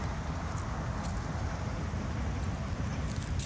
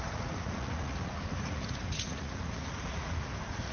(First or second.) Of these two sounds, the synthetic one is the second